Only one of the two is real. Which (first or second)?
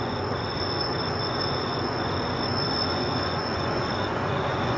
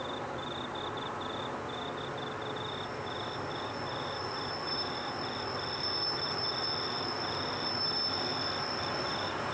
second